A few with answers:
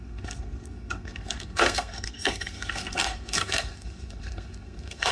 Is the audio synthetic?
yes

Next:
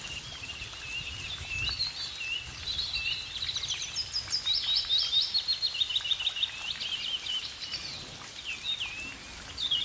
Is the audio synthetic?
no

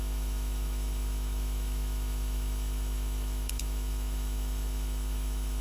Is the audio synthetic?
yes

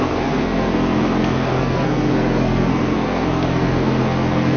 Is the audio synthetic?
yes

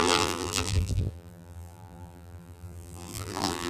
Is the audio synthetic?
yes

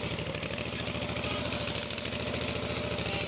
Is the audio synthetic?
no